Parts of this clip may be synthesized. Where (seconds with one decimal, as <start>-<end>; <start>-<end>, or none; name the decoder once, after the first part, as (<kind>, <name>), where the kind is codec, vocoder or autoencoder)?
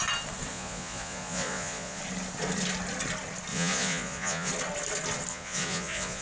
0.5-2.0 (vocoder, Vocos); 3.5-4.5; 5.3-6.2